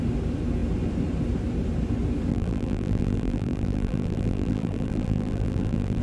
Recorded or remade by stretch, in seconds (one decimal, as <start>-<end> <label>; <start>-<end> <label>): 0.0-2.3 recorded; 2.3-6.0 remade